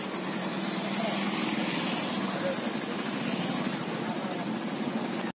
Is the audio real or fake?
real